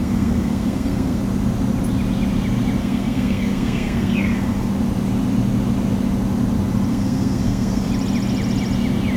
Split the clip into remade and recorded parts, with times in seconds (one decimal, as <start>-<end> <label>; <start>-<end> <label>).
0.0-1.2 remade; 1.2-2.8 recorded; 2.8-4.7 remade; 4.7-6.9 recorded; 6.9-7.9 remade; 7.9-9.2 recorded